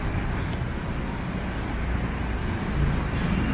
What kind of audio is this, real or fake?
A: real